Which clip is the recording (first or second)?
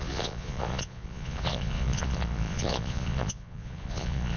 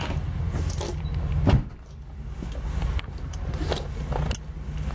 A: second